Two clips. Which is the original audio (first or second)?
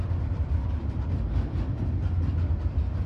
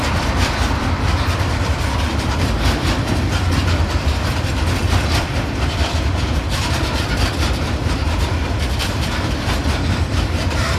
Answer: first